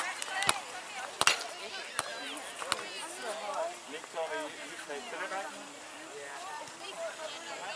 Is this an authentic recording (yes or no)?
yes